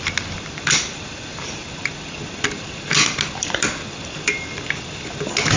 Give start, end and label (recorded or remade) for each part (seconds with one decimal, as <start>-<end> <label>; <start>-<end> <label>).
0.0-5.6 recorded